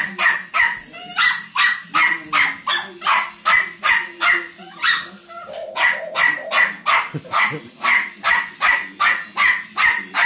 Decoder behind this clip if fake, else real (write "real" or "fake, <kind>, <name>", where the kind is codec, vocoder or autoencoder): real